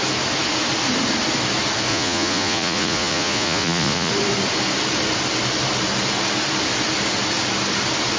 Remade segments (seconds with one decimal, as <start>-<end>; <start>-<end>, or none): 1.9-4.1